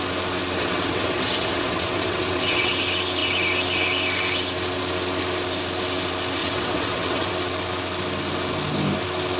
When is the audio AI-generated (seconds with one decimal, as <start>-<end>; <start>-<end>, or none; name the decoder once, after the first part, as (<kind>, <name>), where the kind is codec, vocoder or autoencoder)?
0.6-2.7 (vocoder, WaveNeXt); 6.4-7.3